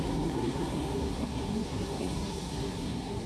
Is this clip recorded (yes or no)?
no